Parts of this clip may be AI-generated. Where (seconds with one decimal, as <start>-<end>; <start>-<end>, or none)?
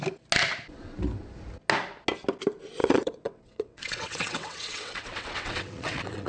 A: 2.8-6.3